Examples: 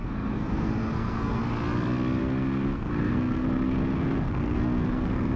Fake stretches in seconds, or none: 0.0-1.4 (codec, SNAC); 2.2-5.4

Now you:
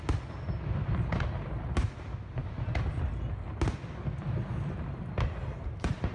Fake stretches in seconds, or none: none

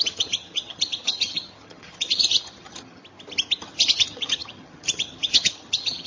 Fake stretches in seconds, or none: 0.0-3.0 (vocoder, HiFi-GAN); 3.6-6.1

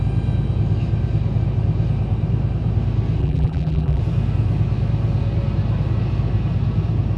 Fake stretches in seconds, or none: 3.2-4.0 (vocoder, BigVGAN v2)